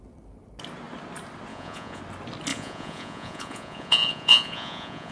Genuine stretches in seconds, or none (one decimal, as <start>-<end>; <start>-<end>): 0.0-1.5; 2.0-2.5